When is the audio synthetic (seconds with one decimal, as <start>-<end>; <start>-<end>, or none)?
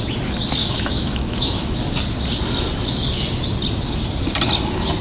0.6-1.8